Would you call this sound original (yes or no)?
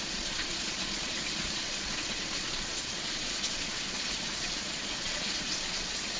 no